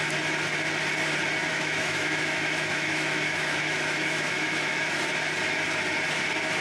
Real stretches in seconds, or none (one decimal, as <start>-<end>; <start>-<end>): 0.0-1.5; 4.9-6.6